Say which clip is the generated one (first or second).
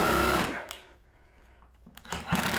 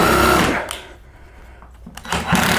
first